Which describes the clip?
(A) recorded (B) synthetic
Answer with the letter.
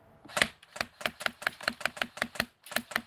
A